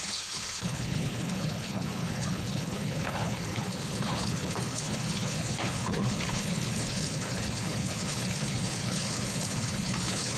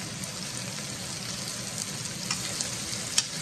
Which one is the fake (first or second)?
first